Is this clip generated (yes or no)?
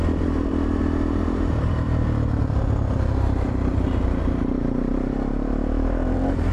yes